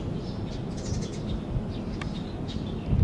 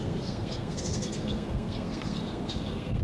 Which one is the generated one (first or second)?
second